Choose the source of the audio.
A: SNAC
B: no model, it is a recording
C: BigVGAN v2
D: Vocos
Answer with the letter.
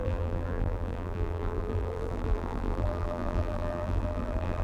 C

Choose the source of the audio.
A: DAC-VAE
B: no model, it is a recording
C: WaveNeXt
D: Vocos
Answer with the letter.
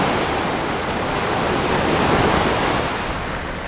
B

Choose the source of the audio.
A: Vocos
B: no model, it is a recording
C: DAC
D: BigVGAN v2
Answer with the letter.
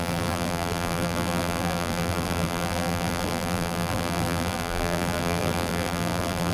D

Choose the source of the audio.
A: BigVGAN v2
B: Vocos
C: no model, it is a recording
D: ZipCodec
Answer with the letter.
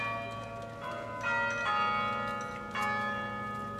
C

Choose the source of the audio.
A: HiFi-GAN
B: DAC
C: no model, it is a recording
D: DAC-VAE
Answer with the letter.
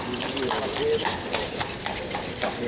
C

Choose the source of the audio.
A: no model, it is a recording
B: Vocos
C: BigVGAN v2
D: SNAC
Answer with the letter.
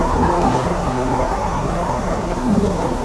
D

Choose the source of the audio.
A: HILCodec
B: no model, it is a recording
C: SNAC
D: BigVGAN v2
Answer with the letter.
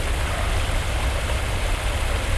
B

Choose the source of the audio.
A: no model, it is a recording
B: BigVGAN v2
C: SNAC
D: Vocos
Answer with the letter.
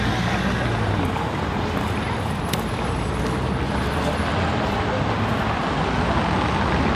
A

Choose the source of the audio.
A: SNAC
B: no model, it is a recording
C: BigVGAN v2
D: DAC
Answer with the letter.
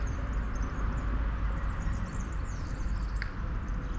B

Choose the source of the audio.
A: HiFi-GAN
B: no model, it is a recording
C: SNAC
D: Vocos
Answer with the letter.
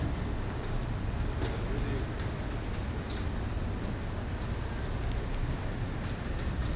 B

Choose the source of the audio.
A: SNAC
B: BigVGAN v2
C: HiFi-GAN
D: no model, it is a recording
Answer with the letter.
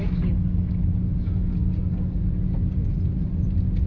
D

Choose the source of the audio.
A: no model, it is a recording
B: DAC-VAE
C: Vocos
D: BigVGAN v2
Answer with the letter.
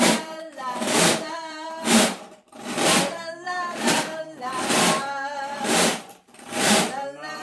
D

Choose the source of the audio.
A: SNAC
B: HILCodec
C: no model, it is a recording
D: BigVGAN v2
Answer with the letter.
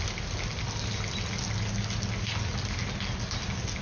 C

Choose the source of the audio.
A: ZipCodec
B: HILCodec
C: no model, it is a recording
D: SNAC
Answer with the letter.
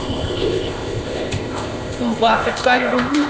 A